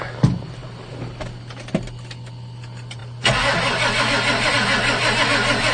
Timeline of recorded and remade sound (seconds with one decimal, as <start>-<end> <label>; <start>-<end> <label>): 0.0-5.7 recorded